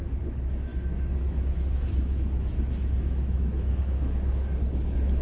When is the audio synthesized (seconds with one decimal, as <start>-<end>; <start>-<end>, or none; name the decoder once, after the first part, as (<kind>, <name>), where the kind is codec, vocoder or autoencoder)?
0.0-5.2 (autoencoder, DAC-VAE)